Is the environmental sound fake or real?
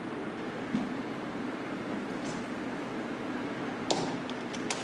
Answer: real